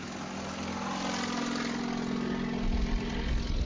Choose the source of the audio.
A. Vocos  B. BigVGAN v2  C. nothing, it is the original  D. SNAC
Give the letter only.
C